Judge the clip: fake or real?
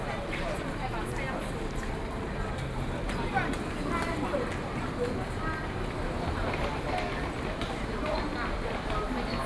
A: real